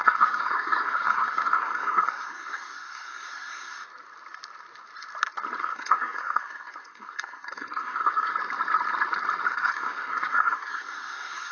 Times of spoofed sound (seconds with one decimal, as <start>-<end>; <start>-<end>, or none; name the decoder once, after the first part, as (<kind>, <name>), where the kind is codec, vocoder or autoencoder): 0.0-3.8 (codec, SNAC); 5.6-8.3; 9.5-11.5